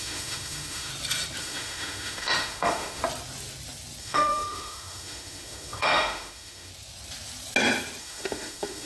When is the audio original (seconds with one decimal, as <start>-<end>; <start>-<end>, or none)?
0.9-1.4; 3.0-4.0; 6.7-8.0